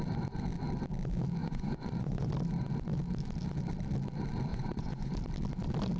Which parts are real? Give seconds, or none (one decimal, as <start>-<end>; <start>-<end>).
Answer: 0.0-1.4; 2.3-4.5; 5.1-6.0